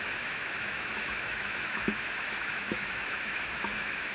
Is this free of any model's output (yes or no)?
no